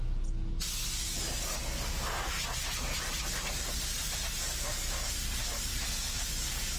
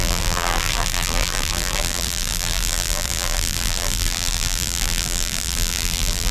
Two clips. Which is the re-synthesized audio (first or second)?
second